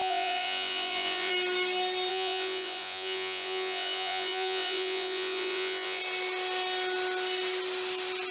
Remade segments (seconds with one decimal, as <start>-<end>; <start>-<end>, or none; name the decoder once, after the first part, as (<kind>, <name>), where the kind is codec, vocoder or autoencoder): 0.0-1.3 (vocoder, Vocos); 2.1-6.0